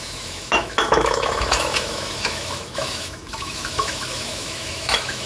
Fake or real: fake